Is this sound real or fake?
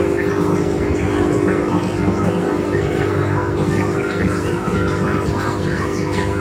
fake